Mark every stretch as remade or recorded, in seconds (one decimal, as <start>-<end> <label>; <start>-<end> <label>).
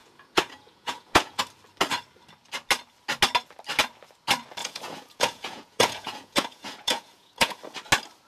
0.0-1.4 remade; 1.4-4.6 recorded; 4.6-7.6 remade; 7.6-8.3 recorded